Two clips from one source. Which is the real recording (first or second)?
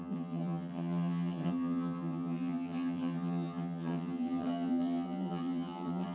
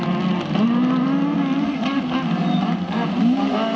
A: second